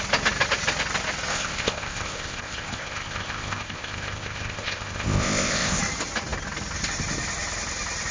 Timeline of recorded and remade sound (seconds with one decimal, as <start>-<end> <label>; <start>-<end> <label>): 0.0-1.3 recorded; 1.3-5.8 remade; 5.8-8.1 recorded